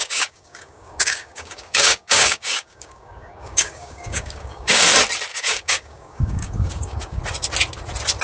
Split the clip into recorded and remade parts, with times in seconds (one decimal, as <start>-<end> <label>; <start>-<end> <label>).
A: 0.0-4.8 remade; 4.8-5.3 recorded; 5.3-7.2 remade; 7.2-8.2 recorded